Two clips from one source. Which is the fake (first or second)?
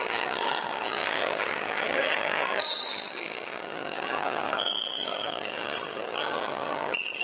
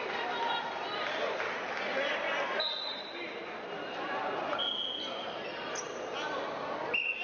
first